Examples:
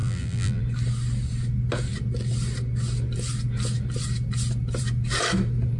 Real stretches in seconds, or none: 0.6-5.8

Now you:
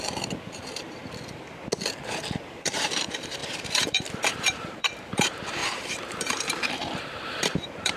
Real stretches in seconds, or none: 1.0-2.5